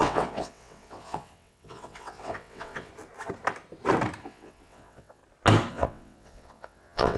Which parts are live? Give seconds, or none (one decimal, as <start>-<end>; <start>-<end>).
2.9-4.2; 5.2-5.7